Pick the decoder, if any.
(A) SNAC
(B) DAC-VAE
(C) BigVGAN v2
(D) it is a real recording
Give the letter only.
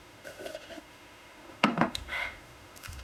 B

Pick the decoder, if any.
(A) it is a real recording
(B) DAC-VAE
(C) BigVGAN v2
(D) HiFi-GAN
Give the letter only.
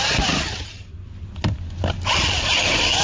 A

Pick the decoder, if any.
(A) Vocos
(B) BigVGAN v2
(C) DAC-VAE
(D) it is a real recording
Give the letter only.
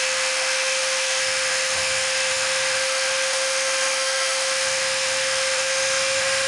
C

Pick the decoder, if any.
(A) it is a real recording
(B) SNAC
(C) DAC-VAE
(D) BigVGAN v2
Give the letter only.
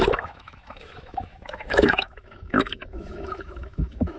C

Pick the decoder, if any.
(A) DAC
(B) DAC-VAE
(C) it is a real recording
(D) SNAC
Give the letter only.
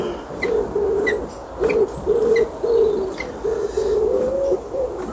C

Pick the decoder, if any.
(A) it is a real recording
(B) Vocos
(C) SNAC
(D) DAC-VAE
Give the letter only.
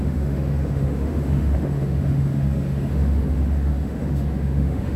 D